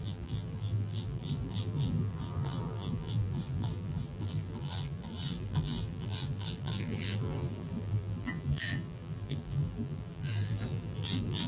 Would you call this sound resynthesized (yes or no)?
yes